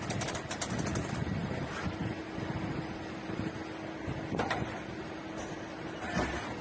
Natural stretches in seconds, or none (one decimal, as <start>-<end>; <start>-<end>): 0.0-6.6